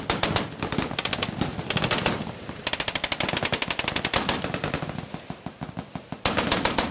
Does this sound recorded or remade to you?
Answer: recorded